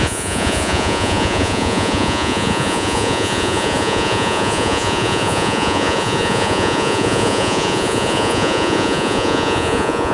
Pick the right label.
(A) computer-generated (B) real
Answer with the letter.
A